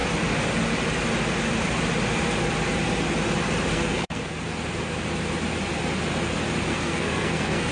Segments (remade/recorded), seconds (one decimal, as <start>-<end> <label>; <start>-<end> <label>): 0.0-3.7 recorded; 3.7-4.3 remade; 4.3-6.7 recorded; 6.7-7.7 remade